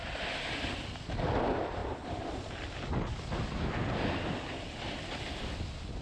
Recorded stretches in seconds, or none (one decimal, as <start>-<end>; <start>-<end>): 0.0-6.0